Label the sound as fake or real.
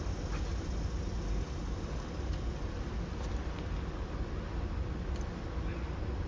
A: real